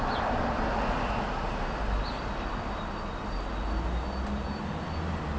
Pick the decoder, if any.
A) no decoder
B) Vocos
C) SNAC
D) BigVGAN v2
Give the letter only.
A